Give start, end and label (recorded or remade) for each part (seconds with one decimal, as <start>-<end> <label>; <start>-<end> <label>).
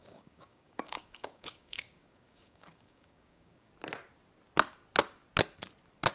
0.0-3.7 remade; 3.7-6.1 recorded